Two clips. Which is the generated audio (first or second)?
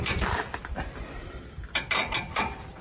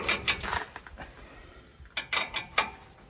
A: first